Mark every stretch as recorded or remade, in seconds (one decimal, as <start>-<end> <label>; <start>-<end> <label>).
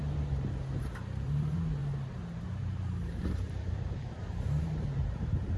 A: 0.0-0.8 recorded; 0.8-1.8 remade; 1.8-2.4 recorded; 2.4-5.6 remade